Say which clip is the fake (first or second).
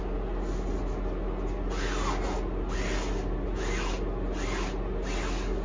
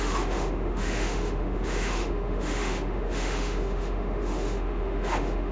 second